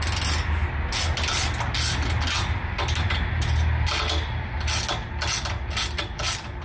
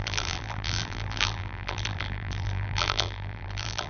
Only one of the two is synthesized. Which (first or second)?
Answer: second